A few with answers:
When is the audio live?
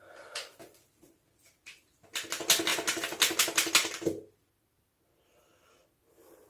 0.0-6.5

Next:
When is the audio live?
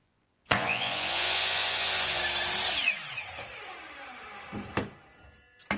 2.2-5.8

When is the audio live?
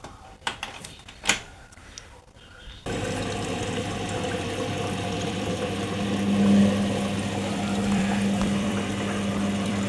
1.8-4.3